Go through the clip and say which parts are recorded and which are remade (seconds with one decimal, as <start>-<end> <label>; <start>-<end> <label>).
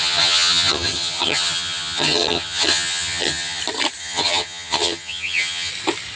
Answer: 0.0-3.6 remade; 3.6-4.0 recorded; 4.0-5.7 remade; 5.7-6.2 recorded